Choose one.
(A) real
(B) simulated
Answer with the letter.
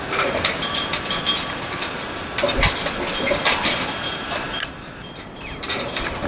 B